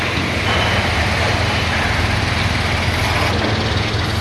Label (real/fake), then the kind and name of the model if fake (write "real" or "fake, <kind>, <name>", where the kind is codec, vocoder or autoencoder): real